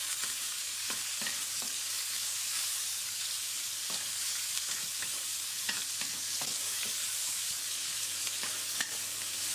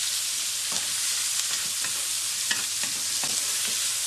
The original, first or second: second